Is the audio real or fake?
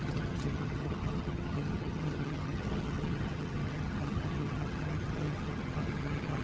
fake